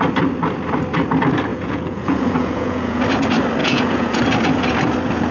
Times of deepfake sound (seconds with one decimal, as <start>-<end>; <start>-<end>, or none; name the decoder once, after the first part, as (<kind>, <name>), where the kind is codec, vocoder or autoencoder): 1.5-3.0 (vocoder, Vocos); 3.6-4.2